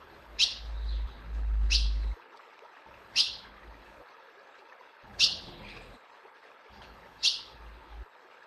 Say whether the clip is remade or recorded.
remade